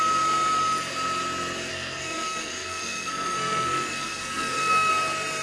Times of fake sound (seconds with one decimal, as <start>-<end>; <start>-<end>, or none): 1.7-4.9

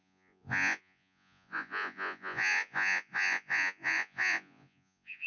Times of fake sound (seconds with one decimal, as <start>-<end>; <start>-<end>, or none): 0.0-5.3

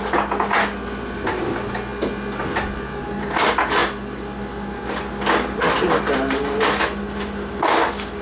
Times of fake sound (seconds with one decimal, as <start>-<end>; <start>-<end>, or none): none

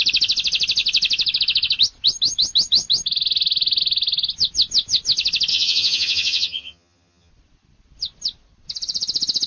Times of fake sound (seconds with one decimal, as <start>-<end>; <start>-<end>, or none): 5.5-7.3

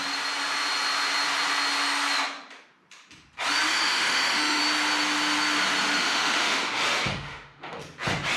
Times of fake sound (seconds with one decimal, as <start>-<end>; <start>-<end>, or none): 3.7-4.6; 6.0-6.6; 7.1-7.8

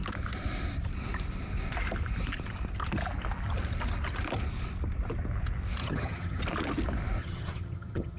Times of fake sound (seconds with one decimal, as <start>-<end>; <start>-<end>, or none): 5.8-6.4; 7.2-8.2

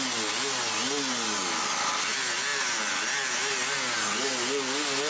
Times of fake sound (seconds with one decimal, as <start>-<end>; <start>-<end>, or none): none

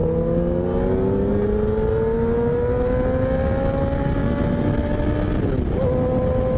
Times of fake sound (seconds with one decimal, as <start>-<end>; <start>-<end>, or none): none